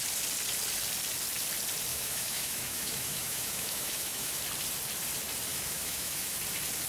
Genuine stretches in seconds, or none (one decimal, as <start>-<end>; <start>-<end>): 0.0-1.9; 4.4-5.5; 6.4-6.9